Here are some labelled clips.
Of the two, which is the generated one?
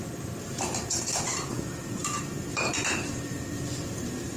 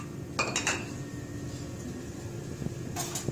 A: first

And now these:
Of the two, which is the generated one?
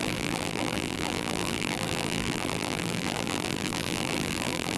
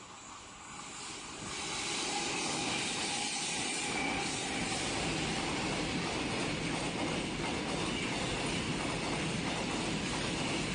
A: first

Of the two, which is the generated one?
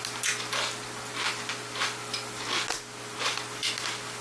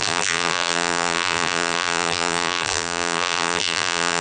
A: second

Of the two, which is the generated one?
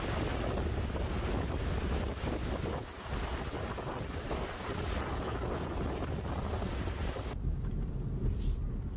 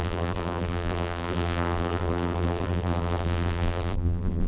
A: second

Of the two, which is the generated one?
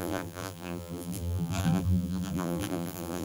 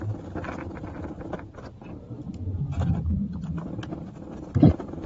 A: first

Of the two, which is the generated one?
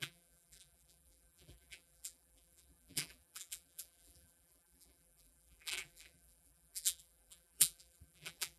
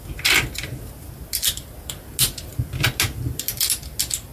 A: first